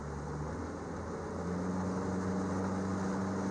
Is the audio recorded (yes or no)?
yes